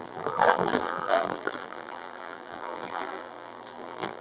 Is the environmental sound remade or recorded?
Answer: remade